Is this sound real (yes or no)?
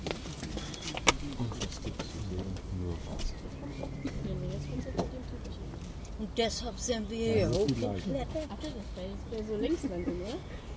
yes